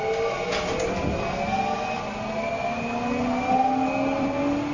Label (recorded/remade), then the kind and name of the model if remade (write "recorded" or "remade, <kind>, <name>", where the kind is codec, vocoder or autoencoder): recorded